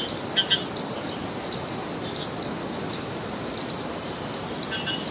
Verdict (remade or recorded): recorded